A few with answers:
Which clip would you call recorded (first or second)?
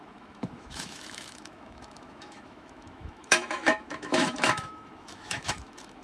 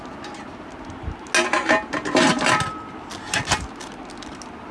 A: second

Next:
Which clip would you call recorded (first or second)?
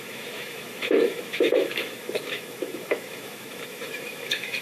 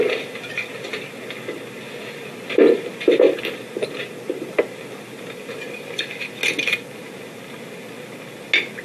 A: second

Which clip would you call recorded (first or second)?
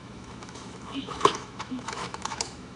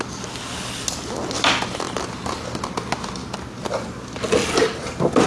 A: second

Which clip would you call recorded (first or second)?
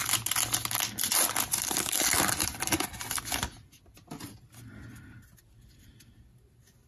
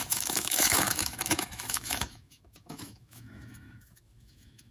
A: first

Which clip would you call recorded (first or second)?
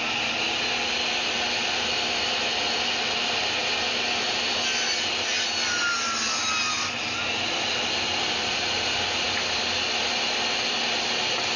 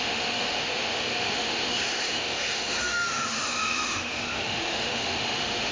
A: first